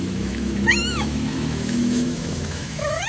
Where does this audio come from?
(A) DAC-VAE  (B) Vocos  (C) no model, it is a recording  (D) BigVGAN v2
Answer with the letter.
A